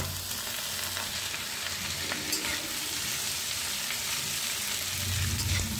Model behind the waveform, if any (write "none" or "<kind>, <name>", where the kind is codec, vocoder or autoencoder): none